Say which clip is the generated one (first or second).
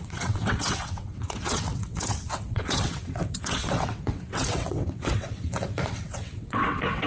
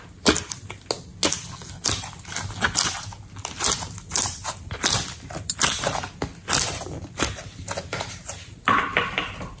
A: first